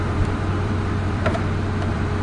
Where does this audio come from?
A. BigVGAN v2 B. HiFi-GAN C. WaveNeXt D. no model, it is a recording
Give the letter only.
A